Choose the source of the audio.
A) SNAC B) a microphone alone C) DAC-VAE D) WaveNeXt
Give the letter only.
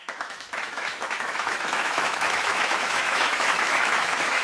C